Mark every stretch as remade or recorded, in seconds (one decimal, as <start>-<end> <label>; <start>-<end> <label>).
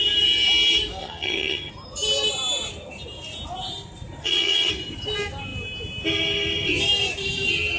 0.0-1.0 recorded; 1.0-1.7 remade; 1.7-4.2 recorded; 4.2-4.7 remade; 4.7-7.8 recorded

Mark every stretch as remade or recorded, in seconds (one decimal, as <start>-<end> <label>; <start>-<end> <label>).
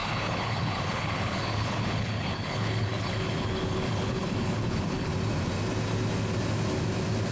0.0-5.1 remade; 5.1-7.3 recorded